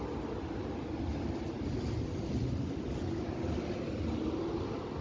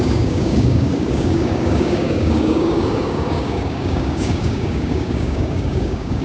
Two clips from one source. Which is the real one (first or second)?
first